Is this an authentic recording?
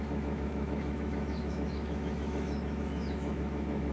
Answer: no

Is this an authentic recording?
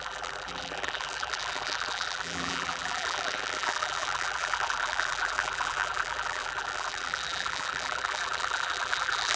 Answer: no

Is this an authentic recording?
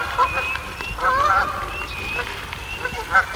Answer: no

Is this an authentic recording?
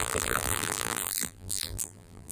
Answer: no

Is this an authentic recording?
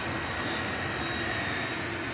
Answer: yes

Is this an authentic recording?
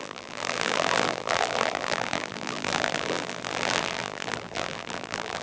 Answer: no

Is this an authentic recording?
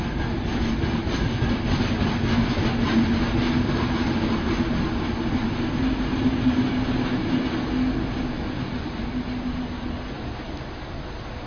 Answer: yes